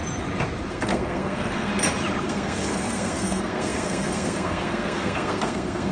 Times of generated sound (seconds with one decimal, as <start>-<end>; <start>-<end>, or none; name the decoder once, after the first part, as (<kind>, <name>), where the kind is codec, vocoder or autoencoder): 0.7-1.7 (codec, SNAC); 2.2-5.9